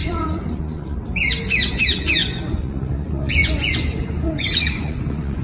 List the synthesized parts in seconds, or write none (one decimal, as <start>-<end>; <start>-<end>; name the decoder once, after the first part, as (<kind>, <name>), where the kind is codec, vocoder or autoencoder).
0.0-1.0 (vocoder, Vocos); 2.2-5.4